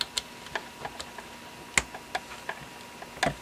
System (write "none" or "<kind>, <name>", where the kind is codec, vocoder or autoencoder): none